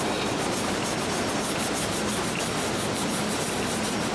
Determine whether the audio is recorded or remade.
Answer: recorded